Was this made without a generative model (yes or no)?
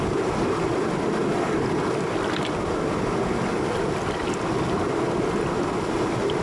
yes